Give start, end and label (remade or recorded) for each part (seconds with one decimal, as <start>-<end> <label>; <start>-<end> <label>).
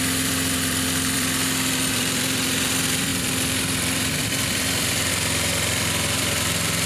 0.0-6.9 remade